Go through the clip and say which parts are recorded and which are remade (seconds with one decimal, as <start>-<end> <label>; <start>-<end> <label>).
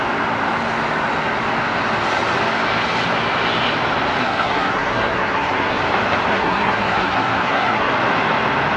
0.0-4.2 recorded; 4.2-5.8 remade; 5.8-6.3 recorded; 6.3-7.9 remade; 7.9-8.8 recorded